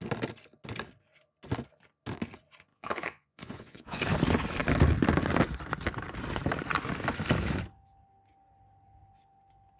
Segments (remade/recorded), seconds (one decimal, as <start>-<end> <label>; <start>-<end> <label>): 0.0-2.7 recorded; 2.7-4.0 remade; 4.0-9.8 recorded